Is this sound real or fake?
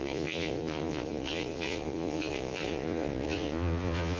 fake